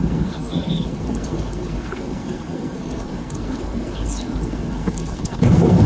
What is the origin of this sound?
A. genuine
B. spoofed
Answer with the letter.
B